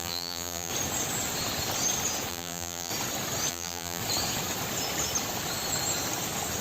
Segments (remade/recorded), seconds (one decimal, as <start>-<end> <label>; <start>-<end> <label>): 0.0-0.7 remade; 0.7-2.3 recorded; 2.3-2.9 remade; 2.9-3.5 recorded; 3.5-4.0 remade; 4.0-6.6 recorded